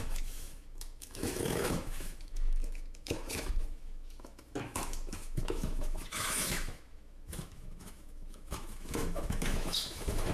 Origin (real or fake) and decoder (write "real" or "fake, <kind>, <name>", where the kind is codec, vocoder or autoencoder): fake, autoencoder, DAC-VAE